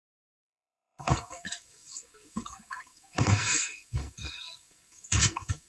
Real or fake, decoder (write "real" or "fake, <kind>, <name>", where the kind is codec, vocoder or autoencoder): fake, codec, SNAC